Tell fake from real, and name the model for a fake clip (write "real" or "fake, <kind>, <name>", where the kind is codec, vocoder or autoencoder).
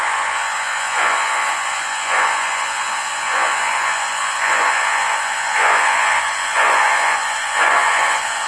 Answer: fake, vocoder, Vocos